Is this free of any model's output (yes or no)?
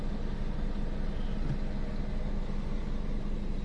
yes